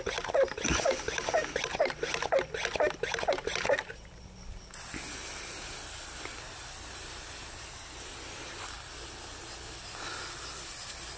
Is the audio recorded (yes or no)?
yes